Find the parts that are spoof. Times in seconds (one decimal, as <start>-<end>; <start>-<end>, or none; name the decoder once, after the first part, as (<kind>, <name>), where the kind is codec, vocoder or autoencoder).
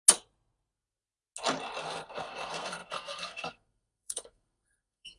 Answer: 1.8-5.2 (codec, SNAC)